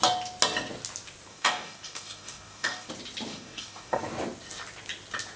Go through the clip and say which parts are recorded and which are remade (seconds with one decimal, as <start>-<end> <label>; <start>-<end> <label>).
0.0-1.3 recorded; 1.3-2.9 remade; 2.9-3.3 recorded; 3.3-4.0 remade; 4.0-5.4 recorded